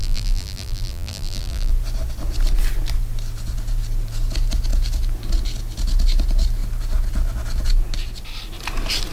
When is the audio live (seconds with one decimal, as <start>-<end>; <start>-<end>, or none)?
1.7-9.1